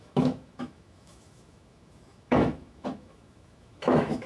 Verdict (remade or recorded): remade